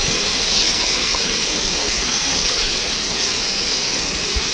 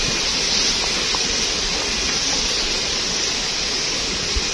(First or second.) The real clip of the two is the second